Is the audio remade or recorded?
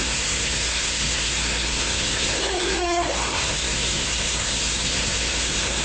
remade